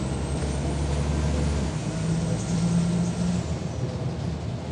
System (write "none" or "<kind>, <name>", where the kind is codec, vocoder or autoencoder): none